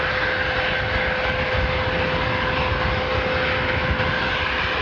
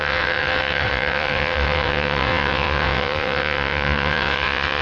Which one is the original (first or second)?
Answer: first